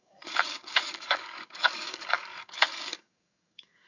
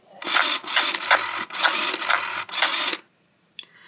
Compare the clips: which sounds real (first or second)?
second